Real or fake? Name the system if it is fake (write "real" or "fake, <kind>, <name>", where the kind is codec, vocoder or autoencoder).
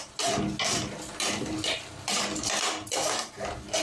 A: real